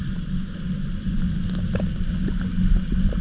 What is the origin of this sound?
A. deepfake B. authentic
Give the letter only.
B